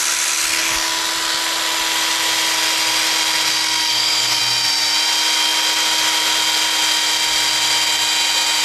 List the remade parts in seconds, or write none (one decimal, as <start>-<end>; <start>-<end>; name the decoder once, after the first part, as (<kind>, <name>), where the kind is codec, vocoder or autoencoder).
3.5-4.4 (codec, SNAC)